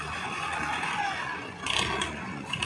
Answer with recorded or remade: remade